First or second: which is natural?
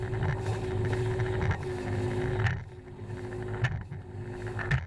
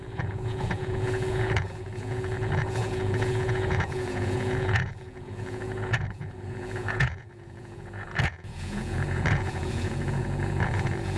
first